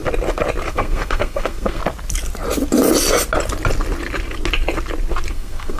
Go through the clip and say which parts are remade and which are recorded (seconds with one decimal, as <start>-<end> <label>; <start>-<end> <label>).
0.0-0.7 recorded; 0.7-1.8 remade; 1.8-5.3 recorded; 5.3-5.8 remade